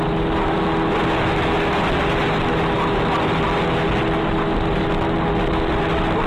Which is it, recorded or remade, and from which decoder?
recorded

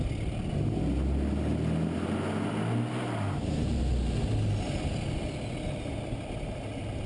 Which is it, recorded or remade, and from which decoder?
recorded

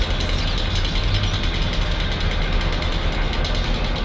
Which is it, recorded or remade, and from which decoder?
recorded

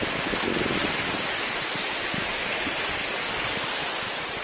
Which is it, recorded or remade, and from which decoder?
recorded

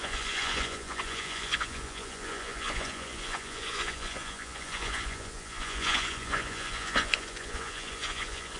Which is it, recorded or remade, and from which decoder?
remade, vocoder, Vocos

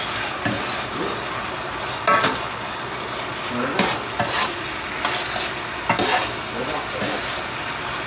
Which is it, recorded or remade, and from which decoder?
recorded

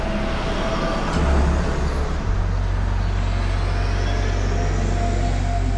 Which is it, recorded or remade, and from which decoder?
recorded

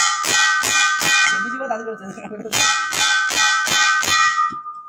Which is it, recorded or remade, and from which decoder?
remade, vocoder, BigVGAN v2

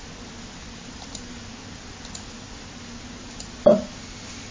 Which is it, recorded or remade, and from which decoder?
recorded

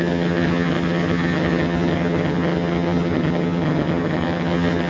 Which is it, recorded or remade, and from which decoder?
remade, vocoder, HiFi-GAN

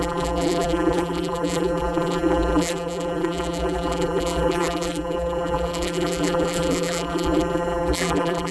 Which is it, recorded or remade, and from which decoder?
remade, vocoder, BigVGAN v2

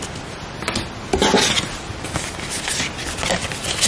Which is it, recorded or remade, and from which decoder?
recorded